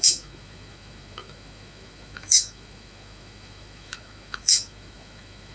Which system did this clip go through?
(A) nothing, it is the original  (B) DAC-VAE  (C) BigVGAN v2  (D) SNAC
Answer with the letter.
B